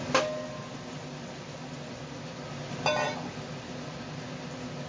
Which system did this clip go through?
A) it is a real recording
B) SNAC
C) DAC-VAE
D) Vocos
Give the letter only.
A